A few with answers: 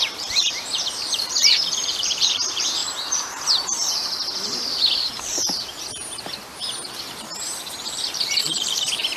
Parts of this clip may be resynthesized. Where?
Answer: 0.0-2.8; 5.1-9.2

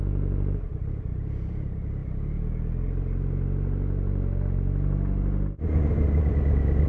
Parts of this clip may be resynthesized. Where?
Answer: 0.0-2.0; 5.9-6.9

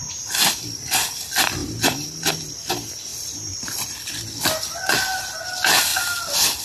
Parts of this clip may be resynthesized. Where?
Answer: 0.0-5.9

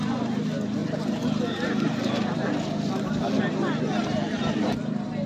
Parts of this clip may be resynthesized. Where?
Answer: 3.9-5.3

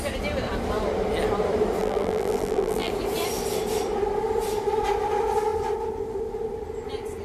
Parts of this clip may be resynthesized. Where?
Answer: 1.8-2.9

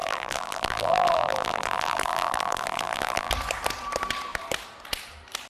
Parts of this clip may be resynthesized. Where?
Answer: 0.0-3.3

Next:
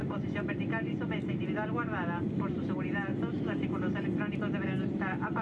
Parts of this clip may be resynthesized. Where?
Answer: none